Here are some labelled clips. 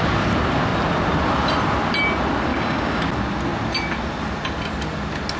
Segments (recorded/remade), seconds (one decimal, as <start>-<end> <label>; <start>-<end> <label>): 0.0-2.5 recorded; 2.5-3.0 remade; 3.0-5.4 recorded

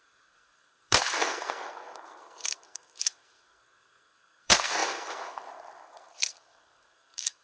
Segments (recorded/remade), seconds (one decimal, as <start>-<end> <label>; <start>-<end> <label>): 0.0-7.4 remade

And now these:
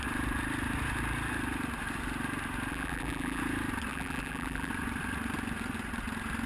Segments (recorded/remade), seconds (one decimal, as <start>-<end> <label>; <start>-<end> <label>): 0.0-2.7 recorded; 2.7-3.4 remade; 3.4-3.9 recorded; 3.9-4.7 remade; 4.7-6.5 recorded

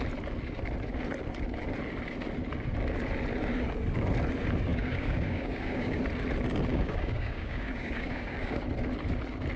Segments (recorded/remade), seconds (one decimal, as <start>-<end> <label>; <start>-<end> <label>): 0.0-4.7 recorded; 4.7-6.0 remade; 6.0-6.7 recorded; 6.7-8.6 remade; 8.6-9.6 recorded

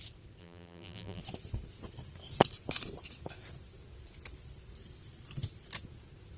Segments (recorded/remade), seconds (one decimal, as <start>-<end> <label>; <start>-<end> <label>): 0.0-0.4 recorded; 0.4-1.2 remade; 1.2-6.4 recorded